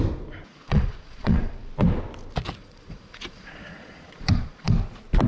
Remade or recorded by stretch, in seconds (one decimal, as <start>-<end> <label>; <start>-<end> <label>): 0.0-0.5 recorded; 0.5-1.7 remade; 1.7-2.6 recorded; 2.6-4.7 remade; 4.7-5.3 recorded